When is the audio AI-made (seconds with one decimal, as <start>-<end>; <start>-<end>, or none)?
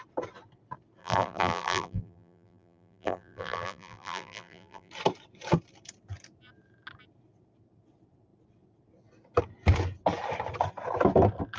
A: 1.0-4.9